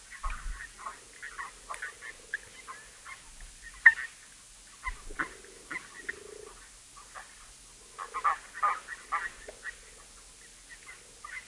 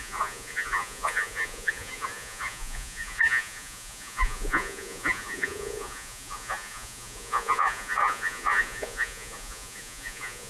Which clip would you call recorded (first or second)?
first